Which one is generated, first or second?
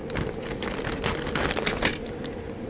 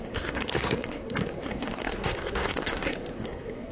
second